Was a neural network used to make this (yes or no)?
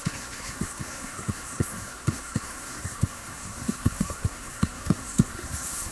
yes